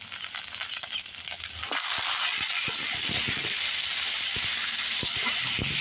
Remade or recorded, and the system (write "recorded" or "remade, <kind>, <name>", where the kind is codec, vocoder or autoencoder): recorded